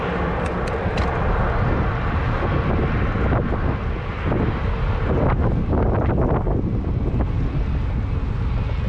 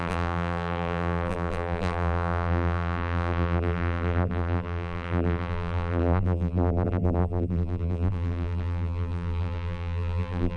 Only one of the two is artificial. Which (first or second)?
second